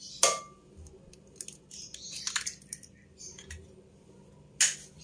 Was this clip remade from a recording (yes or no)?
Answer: no